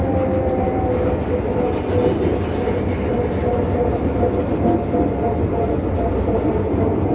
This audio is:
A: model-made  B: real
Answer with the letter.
B